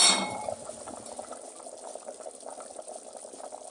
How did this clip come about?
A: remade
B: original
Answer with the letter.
B